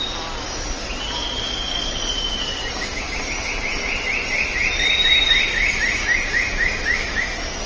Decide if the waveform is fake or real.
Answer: real